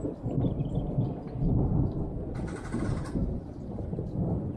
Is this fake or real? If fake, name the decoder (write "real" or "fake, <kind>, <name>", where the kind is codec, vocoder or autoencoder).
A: fake, vocoder, BigVGAN v2